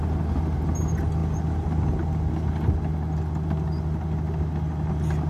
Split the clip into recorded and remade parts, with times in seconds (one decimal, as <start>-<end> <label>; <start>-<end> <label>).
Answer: 0.0-5.3 recorded